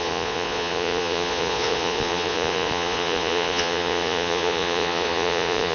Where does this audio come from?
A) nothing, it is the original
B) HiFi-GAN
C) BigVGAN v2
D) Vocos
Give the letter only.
D